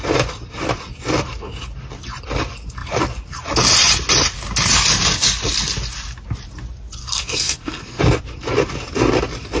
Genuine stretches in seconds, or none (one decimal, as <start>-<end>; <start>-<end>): 0.0-7.0; 8.0-9.6